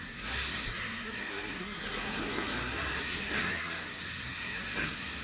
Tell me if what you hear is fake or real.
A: fake